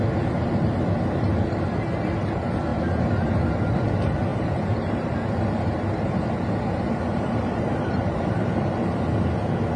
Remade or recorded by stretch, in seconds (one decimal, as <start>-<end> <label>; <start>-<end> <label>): 0.0-4.3 recorded; 4.3-5.1 remade; 5.1-7.1 recorded; 7.1-8.2 remade; 8.2-9.8 recorded